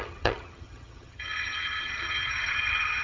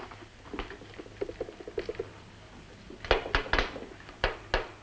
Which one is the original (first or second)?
second